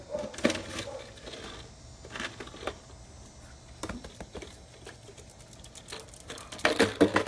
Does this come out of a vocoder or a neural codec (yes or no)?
no